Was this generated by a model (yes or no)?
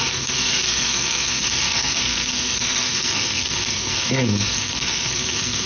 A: yes